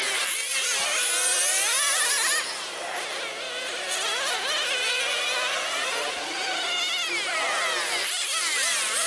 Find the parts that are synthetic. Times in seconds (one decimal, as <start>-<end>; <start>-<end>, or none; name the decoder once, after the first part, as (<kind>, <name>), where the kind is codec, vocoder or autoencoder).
none